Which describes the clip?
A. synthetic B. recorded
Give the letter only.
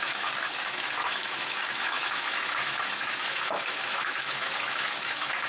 A